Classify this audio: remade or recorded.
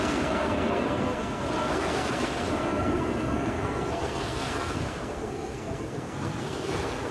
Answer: remade